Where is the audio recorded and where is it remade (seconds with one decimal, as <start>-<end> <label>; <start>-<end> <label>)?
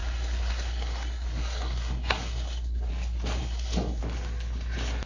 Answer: 0.0-2.9 remade; 2.9-3.4 recorded; 3.4-4.0 remade; 4.0-5.1 recorded